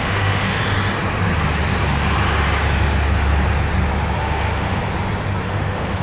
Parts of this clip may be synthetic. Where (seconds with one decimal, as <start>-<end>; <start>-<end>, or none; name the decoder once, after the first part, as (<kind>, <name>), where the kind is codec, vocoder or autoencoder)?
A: 0.0-0.6 (autoencoder, DAC-VAE); 4.2-4.8; 5.4-6.0